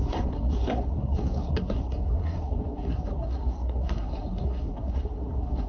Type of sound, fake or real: fake